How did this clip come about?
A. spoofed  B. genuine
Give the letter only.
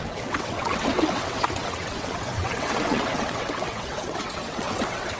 A